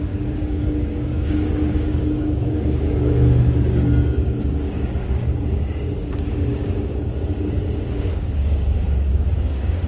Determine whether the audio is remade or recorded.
remade